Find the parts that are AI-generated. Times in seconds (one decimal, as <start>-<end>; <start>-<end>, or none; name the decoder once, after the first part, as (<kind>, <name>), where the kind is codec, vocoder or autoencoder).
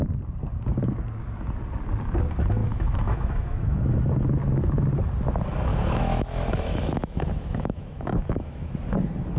2.6-4.0 (autoencoder, DAC-VAE); 5.7-8.7